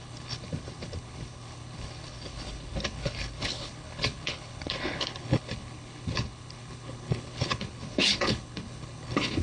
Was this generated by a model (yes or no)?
yes